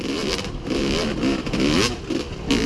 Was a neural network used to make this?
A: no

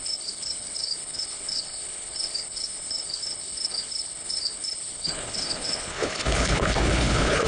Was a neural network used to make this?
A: yes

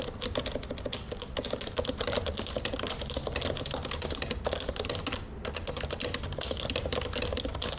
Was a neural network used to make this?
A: no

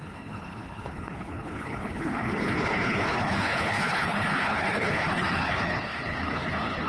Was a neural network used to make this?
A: yes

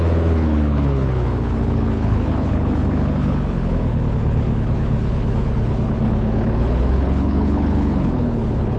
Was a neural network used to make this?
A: yes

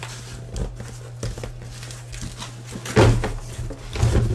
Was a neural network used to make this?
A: no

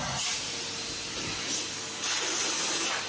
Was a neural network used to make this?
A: no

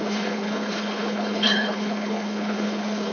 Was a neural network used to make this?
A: yes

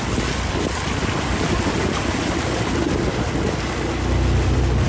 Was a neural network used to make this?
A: no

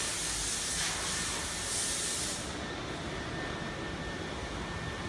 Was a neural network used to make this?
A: no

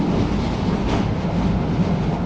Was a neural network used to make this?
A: no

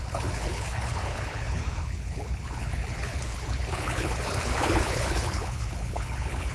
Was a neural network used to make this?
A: yes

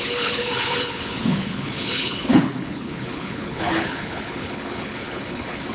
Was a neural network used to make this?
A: yes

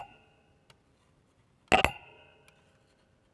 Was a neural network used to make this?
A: no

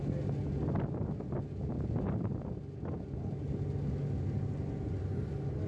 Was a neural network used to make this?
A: no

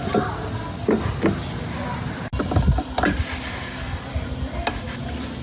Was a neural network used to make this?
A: no